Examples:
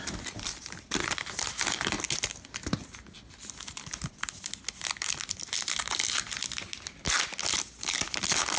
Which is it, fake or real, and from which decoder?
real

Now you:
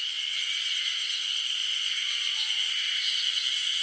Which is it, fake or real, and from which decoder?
real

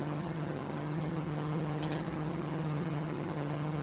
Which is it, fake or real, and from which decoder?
fake, vocoder, HiFi-GAN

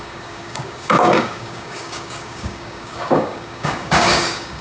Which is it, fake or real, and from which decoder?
fake, codec, DAC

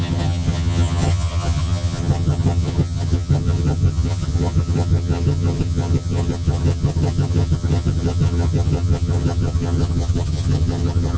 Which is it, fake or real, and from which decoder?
fake, vocoder, HiFi-GAN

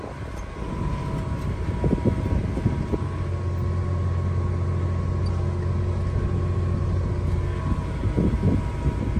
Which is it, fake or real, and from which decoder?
real